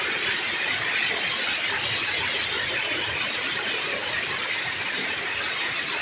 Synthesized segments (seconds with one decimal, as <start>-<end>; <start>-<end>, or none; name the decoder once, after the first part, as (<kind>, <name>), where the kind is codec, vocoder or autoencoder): none